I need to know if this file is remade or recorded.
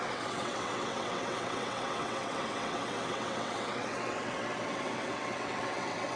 remade